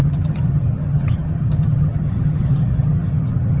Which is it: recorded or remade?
remade